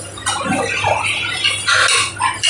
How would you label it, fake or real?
real